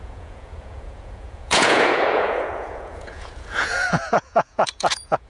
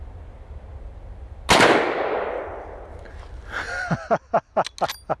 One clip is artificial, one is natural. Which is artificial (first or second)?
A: first